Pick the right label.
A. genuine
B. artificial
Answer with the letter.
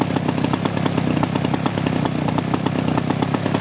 A